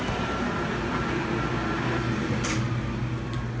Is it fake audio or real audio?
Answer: real